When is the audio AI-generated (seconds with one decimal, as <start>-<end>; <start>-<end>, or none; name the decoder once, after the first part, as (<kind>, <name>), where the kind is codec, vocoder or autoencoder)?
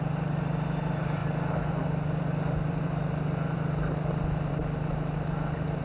none